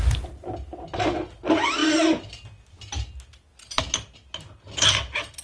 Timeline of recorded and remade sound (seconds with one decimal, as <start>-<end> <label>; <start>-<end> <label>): 0.0-5.4 recorded